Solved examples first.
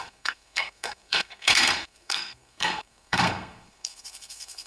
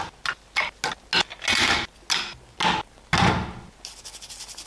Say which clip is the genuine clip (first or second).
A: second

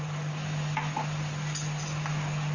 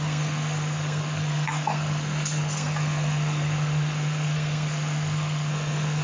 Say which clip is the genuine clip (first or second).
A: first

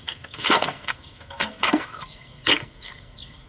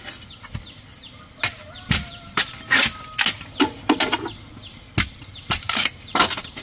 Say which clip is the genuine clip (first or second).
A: second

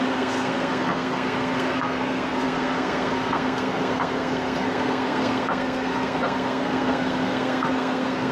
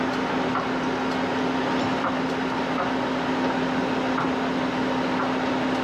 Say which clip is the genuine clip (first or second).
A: second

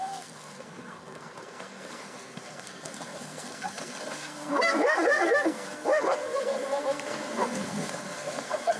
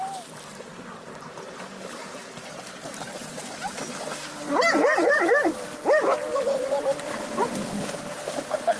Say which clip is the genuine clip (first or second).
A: second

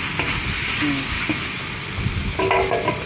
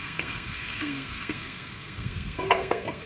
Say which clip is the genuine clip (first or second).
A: first